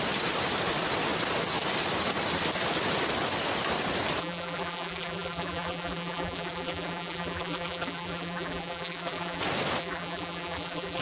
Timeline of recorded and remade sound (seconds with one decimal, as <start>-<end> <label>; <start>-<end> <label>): 0.0-4.2 recorded; 4.2-9.4 remade; 9.4-9.8 recorded; 9.8-11.0 remade